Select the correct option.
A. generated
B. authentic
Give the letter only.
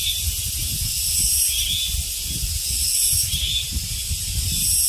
B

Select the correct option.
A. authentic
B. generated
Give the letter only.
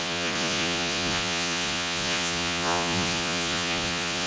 B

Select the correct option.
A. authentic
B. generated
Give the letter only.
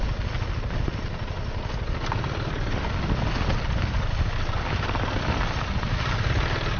A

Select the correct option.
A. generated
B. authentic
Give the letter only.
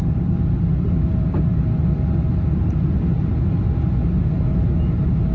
B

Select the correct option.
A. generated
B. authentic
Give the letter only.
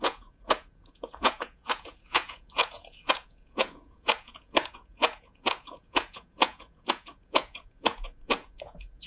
A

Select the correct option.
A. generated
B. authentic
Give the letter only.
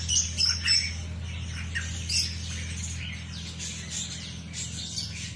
B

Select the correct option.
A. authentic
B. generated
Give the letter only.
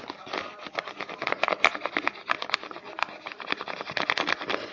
A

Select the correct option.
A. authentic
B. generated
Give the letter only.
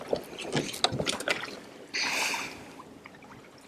A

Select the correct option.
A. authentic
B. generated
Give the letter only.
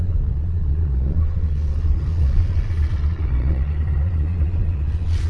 B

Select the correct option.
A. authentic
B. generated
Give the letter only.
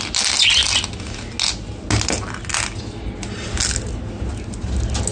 A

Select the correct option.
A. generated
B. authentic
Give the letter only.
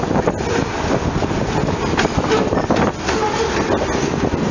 B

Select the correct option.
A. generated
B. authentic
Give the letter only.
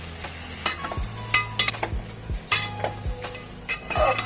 B